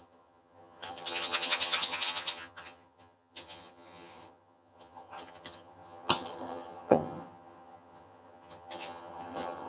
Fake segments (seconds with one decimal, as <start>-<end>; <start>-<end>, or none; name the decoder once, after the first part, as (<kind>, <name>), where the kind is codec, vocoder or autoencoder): 0.0-9.7 (vocoder, HiFi-GAN)